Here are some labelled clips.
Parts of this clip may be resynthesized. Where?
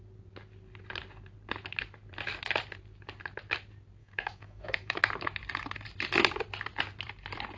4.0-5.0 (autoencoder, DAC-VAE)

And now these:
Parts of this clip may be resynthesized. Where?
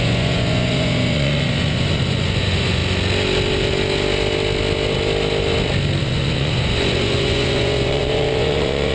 0.0-2.8 (vocoder, Vocos); 6.0-8.9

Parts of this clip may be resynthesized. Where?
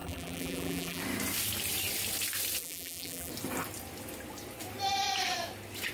0.0-1.0 (vocoder, BigVGAN v2); 2.6-3.3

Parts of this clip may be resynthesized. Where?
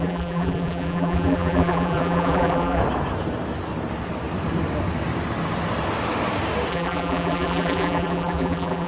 0.0-2.8 (vocoder, BigVGAN v2); 6.7-8.9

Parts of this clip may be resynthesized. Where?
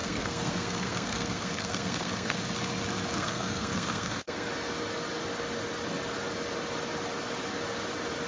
0.0-2.4 (codec, SNAC); 3.1-4.5